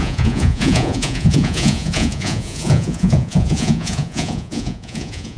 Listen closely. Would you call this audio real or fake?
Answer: fake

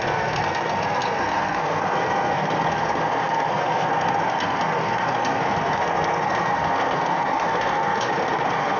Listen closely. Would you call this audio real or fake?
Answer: fake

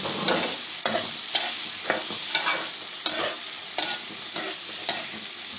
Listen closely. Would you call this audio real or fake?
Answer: real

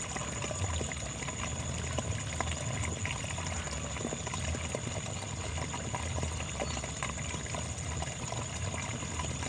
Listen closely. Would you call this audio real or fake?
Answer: real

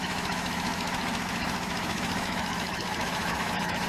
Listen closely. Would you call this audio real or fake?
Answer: fake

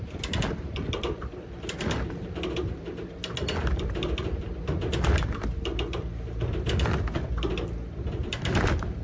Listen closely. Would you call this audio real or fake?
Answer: fake